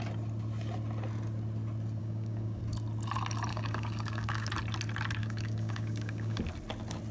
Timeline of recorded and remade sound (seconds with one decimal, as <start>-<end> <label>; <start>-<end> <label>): 0.0-2.0 recorded; 2.0-2.6 remade; 2.6-3.5 recorded; 3.5-4.5 remade; 4.5-5.2 recorded; 5.2-6.4 remade; 6.4-7.1 recorded